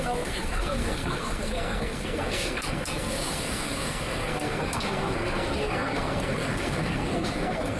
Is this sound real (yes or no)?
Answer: no